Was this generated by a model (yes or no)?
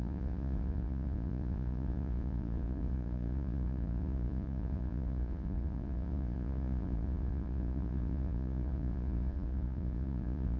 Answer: yes